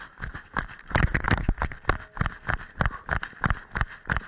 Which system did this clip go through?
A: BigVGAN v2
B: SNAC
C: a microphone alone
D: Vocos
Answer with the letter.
C